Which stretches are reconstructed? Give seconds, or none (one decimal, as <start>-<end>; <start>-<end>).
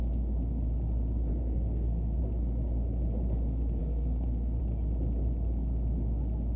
1.3-2.2; 3.8-4.6